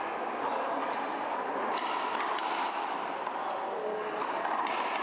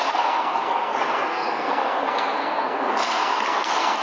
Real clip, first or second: first